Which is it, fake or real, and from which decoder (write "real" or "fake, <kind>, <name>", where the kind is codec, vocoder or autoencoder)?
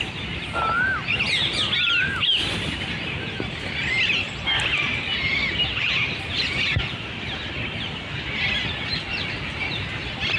real